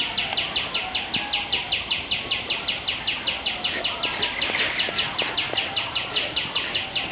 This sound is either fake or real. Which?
real